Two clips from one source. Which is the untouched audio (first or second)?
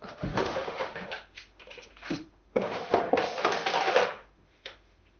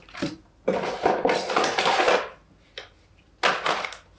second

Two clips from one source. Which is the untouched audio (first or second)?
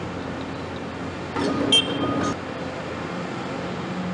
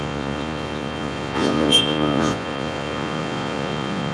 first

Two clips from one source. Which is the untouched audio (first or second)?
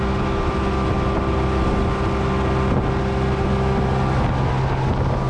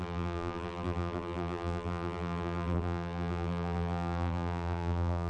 first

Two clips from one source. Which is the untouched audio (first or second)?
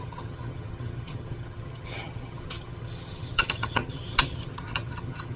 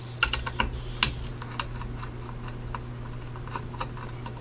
second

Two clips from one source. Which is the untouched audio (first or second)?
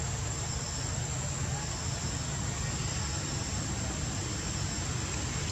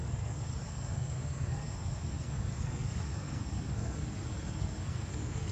first